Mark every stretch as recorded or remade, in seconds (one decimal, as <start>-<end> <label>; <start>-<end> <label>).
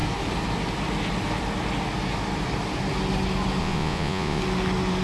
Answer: 0.0-3.6 recorded; 3.6-4.4 remade; 4.4-5.0 recorded